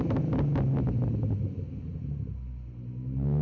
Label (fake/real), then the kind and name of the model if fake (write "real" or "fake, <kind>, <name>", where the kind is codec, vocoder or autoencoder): real